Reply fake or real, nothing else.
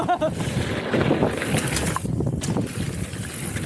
real